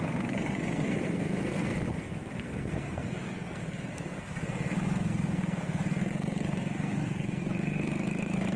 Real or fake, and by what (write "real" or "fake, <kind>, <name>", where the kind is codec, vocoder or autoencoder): fake, codec, SNAC